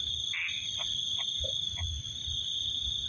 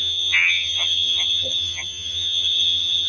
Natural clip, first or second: first